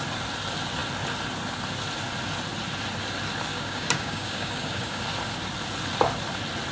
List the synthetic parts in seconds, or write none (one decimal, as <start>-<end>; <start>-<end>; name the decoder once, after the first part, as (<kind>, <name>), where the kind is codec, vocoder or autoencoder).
3.5-5.0 (codec, DAC)

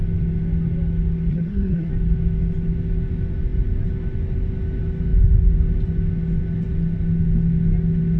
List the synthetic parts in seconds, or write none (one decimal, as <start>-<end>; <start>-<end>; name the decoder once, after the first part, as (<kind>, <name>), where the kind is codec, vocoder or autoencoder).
1.3-1.9 (codec, SNAC)

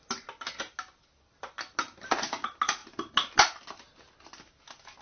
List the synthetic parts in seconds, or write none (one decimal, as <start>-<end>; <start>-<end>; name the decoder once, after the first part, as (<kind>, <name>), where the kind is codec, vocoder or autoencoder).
none

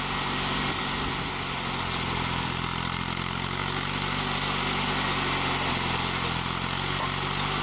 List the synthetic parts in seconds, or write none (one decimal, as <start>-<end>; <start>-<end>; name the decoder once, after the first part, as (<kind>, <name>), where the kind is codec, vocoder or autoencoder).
none